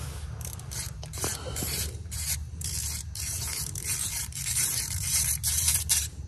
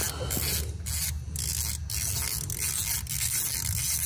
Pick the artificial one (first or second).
first